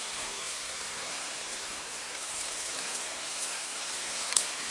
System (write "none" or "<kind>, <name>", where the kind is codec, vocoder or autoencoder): codec, SNAC